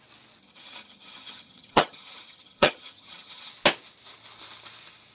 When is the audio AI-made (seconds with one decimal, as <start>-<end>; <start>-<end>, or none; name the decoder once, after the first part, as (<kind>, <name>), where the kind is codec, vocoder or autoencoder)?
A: 0.4-3.5 (vocoder, HiFi-GAN)